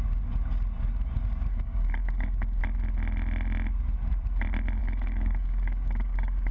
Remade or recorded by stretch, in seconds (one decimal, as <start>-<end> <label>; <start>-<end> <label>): 0.0-1.5 recorded; 1.5-2.6 remade; 2.6-4.8 recorded; 4.8-6.5 remade